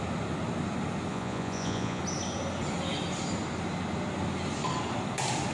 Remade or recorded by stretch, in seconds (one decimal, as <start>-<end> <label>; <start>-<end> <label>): 0.0-1.1 recorded; 1.1-2.0 remade; 2.0-5.5 recorded